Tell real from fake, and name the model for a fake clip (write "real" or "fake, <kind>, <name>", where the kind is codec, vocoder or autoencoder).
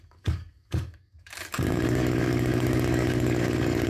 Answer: fake, codec, DAC